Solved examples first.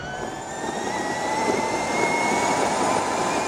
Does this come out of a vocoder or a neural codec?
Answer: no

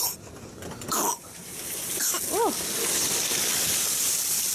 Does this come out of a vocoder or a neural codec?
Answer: no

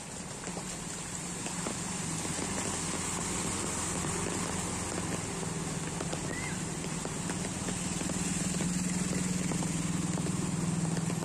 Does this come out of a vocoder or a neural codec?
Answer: no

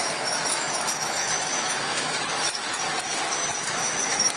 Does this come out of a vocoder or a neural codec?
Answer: yes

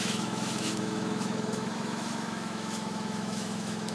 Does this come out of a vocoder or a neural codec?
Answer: yes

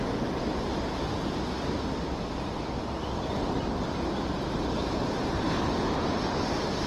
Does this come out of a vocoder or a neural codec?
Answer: no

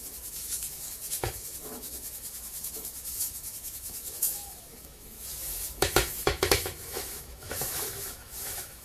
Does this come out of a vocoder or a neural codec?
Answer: yes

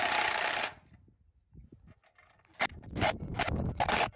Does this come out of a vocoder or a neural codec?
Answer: no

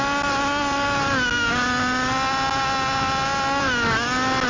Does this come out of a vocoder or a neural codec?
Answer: no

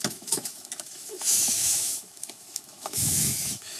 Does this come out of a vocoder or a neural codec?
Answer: yes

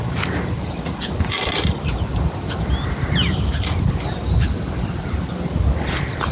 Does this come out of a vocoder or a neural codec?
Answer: no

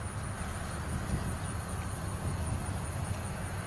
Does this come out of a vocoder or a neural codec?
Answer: no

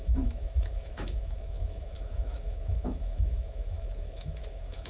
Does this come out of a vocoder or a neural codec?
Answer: yes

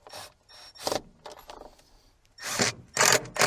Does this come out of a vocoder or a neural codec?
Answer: no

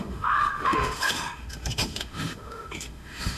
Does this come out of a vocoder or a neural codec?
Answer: yes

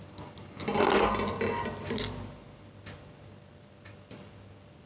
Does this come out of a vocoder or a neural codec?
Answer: no